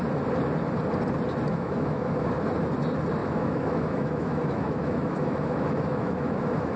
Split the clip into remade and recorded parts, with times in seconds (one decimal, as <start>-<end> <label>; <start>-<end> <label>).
0.0-1.5 recorded; 1.5-2.3 remade; 2.3-3.2 recorded; 3.2-6.8 remade